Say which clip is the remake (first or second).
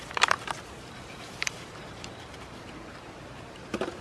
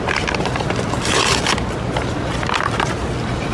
first